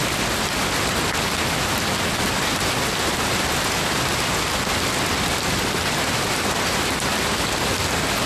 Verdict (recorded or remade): recorded